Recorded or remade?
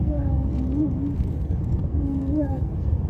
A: remade